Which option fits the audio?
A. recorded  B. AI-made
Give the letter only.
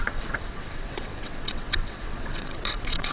B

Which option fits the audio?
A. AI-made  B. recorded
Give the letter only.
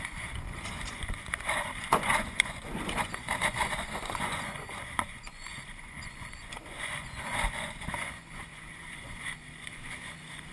A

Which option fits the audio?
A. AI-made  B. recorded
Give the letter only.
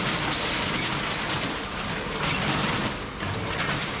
B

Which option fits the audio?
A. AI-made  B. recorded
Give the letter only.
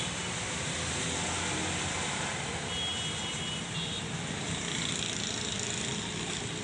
B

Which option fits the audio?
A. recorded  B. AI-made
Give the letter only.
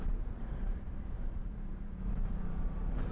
B